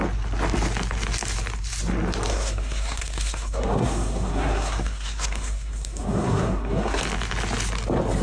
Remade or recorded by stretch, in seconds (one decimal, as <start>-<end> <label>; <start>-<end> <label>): 0.0-2.3 recorded; 2.3-7.0 remade; 7.0-8.2 recorded